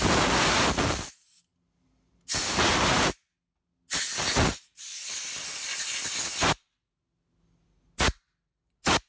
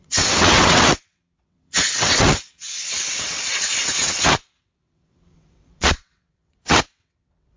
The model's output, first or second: second